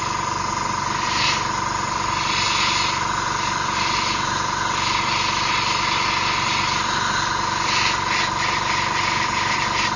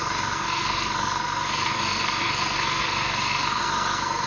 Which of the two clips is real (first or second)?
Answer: first